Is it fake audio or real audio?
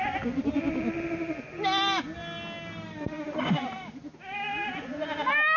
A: real